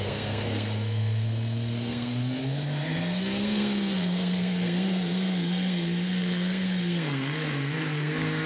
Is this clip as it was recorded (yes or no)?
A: no